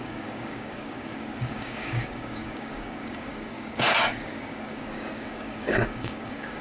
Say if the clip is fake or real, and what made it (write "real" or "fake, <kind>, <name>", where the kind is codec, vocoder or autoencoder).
fake, codec, DAC